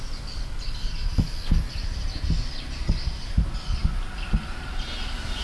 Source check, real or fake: real